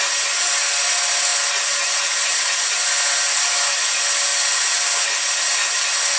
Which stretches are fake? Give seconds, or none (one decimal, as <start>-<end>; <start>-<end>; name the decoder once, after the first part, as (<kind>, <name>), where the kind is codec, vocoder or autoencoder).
none